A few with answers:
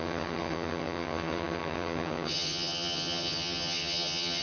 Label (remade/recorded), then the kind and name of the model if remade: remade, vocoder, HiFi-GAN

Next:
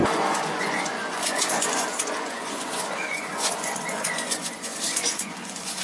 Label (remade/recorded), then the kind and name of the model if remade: remade, vocoder, Vocos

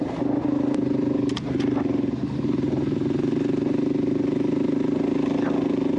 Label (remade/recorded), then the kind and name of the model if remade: recorded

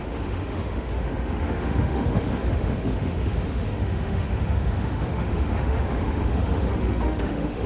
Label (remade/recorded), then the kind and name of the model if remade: remade, autoencoder, DAC-VAE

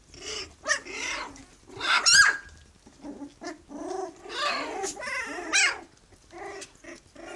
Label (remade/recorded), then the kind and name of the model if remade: recorded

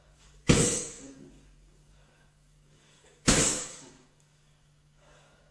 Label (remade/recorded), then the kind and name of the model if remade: remade, codec, DAC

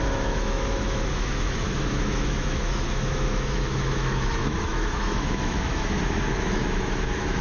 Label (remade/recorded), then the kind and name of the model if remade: remade, autoencoder, DAC-VAE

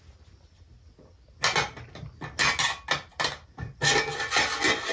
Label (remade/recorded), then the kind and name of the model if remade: recorded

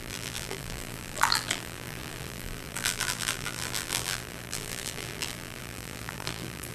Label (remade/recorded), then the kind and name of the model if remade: remade, vocoder, BigVGAN v2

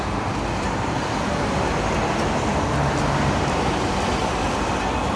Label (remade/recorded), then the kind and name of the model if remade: recorded